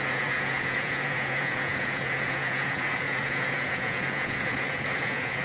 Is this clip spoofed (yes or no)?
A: yes